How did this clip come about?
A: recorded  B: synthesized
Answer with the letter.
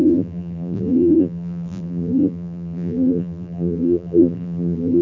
B